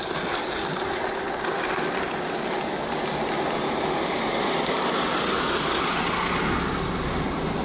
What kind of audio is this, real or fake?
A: real